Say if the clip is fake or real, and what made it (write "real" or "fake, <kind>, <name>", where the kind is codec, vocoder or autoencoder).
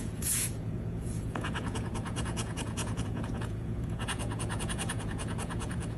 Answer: fake, vocoder, Vocos